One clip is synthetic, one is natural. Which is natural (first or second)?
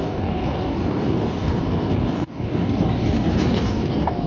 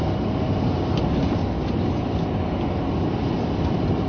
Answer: second